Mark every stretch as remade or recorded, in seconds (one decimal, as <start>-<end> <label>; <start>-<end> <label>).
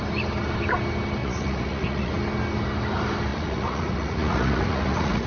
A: 0.0-1.2 recorded; 1.2-2.1 remade; 2.1-3.3 recorded; 3.3-5.3 remade